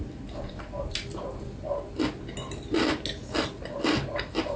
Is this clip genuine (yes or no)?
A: yes